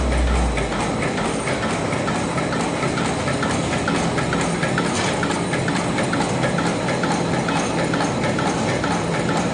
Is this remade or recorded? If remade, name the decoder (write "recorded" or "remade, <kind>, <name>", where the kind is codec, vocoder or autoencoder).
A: recorded